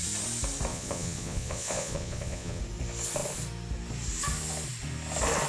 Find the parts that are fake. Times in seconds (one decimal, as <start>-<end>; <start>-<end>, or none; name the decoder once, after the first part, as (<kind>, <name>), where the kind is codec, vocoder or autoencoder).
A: 0.7-2.6 (vocoder, Vocos)